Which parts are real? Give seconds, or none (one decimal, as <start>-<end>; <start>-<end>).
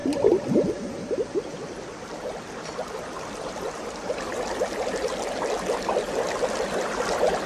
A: 0.0-7.5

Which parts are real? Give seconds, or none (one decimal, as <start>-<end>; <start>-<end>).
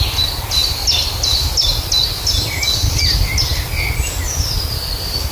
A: 0.0-5.3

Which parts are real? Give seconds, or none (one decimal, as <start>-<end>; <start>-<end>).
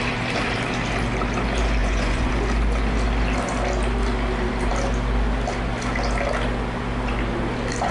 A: 0.0-1.8; 2.3-7.9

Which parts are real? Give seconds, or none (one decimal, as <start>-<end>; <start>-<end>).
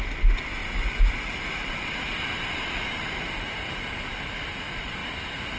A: 0.0-5.6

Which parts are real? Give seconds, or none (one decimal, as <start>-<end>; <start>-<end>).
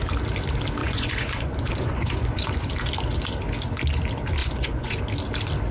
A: 0.0-0.8; 2.7-4.4; 5.0-5.7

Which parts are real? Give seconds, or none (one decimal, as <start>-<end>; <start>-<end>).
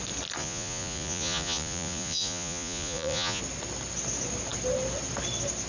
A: 0.0-0.4; 3.4-5.7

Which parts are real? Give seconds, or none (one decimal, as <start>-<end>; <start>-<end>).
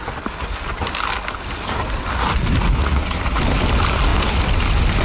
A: 0.0-2.8; 3.4-5.0